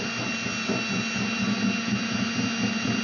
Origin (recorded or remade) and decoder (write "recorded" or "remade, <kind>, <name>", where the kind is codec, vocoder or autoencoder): recorded